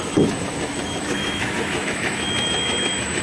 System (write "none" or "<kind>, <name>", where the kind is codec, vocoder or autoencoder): autoencoder, DAC-VAE